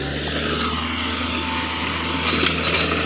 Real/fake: real